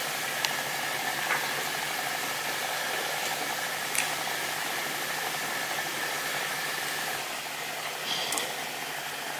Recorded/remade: recorded